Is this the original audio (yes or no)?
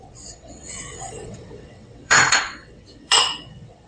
no